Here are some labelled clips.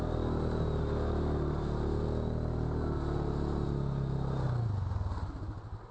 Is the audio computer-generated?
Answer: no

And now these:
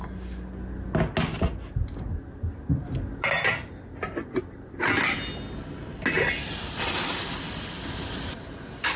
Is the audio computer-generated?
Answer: no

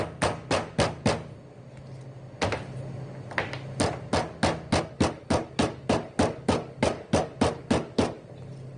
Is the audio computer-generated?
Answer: no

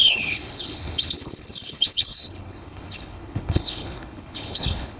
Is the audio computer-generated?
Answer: yes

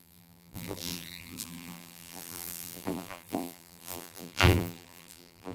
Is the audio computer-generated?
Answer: yes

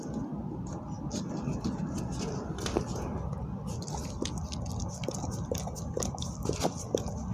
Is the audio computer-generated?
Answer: no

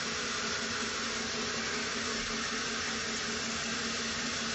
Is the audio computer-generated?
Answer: no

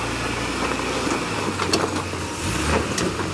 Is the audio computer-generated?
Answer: no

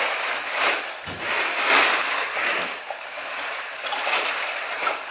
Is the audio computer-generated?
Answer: yes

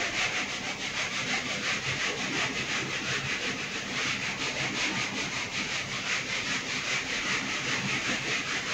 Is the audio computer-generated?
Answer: yes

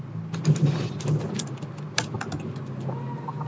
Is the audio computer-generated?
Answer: no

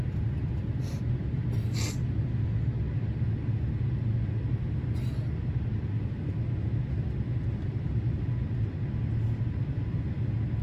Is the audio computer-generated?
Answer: no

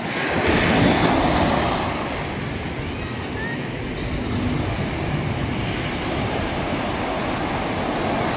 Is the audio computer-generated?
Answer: no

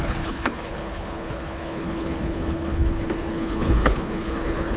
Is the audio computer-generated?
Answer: yes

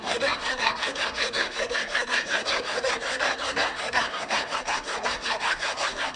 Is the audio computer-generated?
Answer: yes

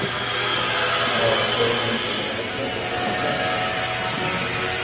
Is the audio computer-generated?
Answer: no